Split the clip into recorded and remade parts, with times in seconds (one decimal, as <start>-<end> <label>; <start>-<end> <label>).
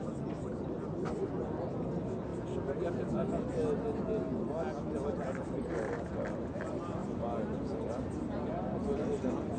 0.0-9.6 recorded